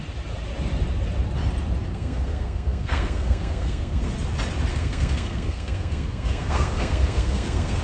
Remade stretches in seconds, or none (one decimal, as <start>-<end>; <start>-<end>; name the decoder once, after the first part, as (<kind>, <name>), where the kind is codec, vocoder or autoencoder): 1.9-4.1 (codec, SNAC); 4.7-7.8